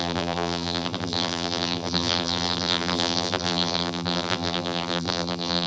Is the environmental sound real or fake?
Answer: fake